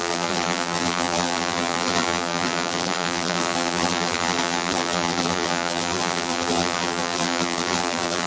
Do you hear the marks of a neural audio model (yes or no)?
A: yes